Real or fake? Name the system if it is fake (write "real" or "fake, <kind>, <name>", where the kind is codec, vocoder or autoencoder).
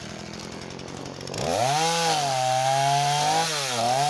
real